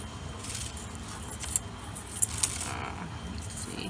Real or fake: real